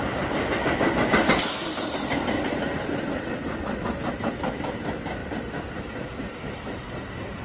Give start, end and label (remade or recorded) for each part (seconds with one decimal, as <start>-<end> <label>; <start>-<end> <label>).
0.0-5.2 recorded; 5.2-5.8 remade; 5.8-7.4 recorded